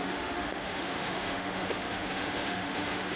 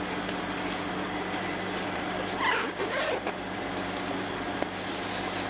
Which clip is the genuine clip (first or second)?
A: second